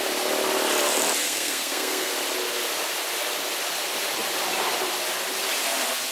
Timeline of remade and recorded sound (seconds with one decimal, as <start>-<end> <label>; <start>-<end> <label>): 0.0-1.2 recorded; 1.2-2.1 remade; 2.1-6.1 recorded